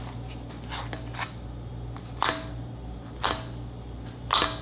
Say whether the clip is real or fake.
real